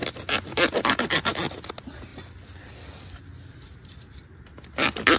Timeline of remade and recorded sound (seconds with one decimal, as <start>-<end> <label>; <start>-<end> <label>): 0.0-1.7 remade; 1.7-5.2 recorded

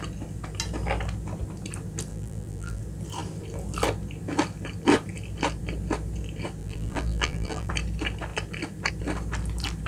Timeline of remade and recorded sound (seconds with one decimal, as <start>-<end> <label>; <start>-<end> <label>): 0.0-2.1 recorded; 2.1-2.8 remade; 2.8-6.6 recorded; 6.6-7.7 remade; 7.7-9.9 recorded

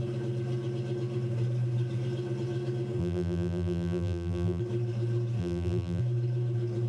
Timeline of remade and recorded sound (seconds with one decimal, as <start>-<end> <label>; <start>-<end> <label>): 0.0-3.0 recorded; 3.0-4.6 remade; 4.6-5.4 recorded; 5.4-6.0 remade; 6.0-6.9 recorded

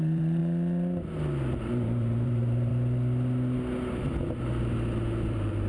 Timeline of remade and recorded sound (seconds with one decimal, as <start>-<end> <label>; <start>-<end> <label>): 0.0-0.4 remade; 0.4-1.6 recorded; 1.6-2.7 remade; 2.7-5.2 recorded; 5.2-5.7 remade

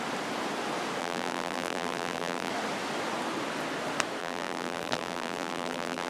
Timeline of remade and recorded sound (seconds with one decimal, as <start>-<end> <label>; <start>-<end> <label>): 0.0-1.0 recorded; 1.0-2.5 remade; 2.5-4.2 recorded; 4.2-6.1 remade

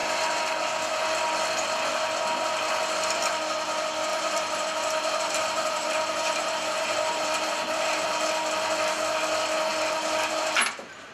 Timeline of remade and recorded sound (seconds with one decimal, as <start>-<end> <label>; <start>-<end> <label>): 0.0-4.1 recorded; 4.1-8.3 remade; 8.3-11.1 recorded